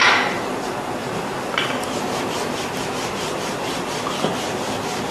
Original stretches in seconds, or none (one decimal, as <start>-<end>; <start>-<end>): 0.6-1.0; 4.1-5.1